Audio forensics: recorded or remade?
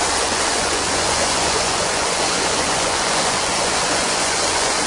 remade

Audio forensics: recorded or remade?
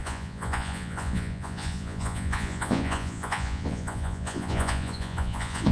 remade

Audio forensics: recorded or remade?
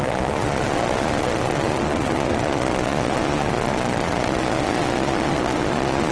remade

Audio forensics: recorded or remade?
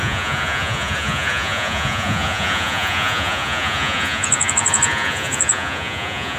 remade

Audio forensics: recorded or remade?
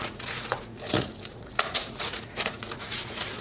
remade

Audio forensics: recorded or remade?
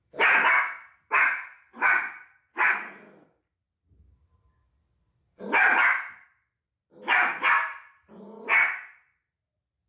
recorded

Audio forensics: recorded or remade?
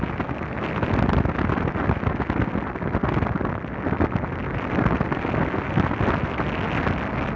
recorded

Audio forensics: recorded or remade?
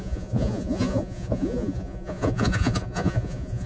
remade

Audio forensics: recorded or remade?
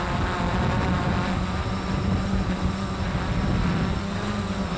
recorded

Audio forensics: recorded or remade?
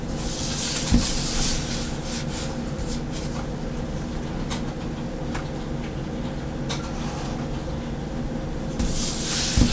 recorded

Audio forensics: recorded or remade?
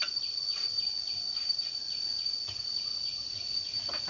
remade